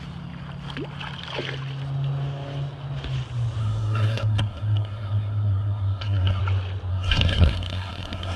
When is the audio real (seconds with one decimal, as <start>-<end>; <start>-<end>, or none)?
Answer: 0.0-3.6; 6.4-6.9